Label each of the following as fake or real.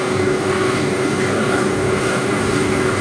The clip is fake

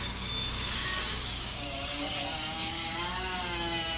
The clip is fake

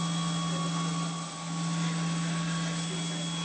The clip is real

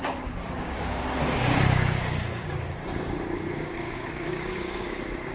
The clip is fake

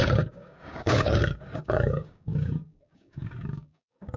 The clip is fake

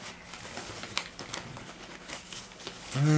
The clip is fake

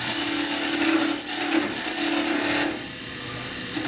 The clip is real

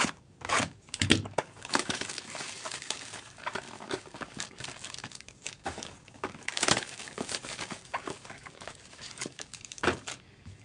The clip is fake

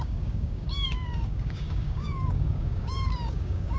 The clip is fake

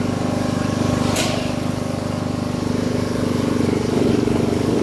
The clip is fake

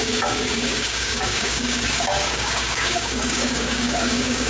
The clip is fake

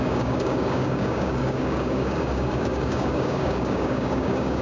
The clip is fake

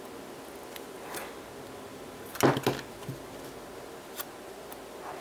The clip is real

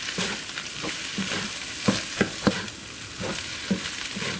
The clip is real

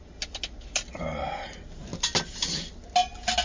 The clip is real